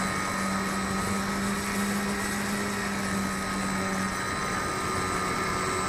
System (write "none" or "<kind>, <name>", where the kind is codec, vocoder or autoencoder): none